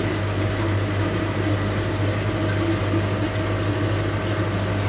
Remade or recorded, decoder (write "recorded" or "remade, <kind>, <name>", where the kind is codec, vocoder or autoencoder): recorded